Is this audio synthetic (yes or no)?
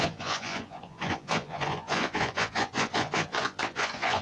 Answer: yes